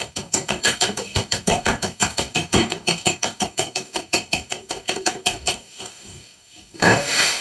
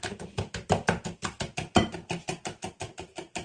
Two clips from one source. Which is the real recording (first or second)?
second